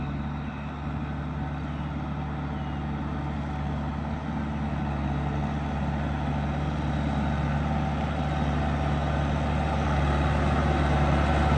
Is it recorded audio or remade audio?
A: recorded